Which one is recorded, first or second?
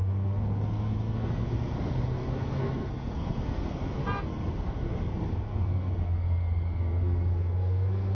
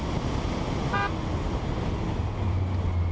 second